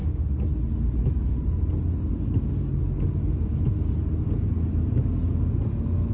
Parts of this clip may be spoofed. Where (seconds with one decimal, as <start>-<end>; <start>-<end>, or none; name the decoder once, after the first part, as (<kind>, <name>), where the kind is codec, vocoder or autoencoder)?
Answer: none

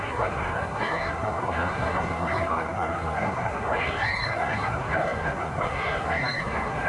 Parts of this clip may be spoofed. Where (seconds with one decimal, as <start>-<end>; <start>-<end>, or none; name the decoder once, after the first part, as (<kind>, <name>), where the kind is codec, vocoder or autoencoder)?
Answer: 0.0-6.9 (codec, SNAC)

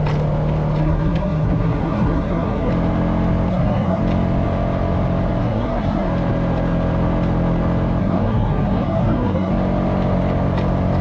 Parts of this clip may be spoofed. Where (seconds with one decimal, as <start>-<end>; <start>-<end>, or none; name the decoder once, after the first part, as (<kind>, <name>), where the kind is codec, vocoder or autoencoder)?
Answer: 0.8-2.7 (codec, SNAC); 3.5-4.0; 5.4-6.1; 8.0-9.5

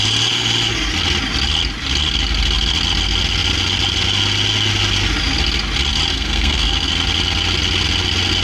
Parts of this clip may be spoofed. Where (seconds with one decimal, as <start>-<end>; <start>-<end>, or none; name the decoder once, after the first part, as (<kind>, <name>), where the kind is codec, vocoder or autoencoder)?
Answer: 6.1-6.9 (codec, SNAC)

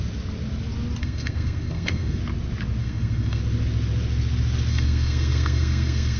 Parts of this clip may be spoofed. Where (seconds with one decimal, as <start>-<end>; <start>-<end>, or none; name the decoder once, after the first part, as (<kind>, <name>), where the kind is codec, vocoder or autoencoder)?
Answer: 1.0-2.2 (codec, SNAC); 2.8-3.4; 4.7-6.2

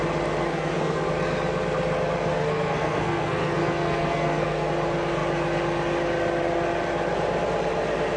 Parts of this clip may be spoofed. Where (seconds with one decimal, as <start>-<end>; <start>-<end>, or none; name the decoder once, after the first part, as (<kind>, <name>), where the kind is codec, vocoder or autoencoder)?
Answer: 0.4-1.1 (codec, SNAC); 2.3-4.7